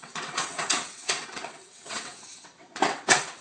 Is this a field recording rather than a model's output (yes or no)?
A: no